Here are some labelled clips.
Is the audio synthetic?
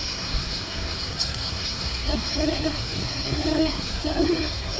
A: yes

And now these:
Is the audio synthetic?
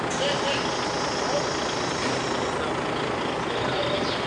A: no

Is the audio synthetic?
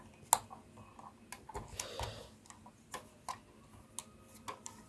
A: no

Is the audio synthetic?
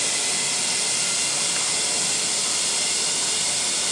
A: no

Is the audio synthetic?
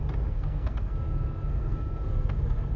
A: yes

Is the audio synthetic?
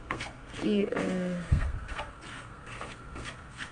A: yes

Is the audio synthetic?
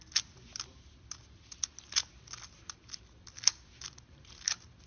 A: no